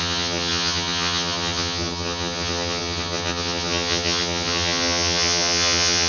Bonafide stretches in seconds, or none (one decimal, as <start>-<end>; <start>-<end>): none